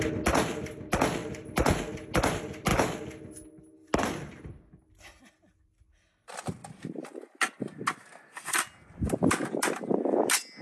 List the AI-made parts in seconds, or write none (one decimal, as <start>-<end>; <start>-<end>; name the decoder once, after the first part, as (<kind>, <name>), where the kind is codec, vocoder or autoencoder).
none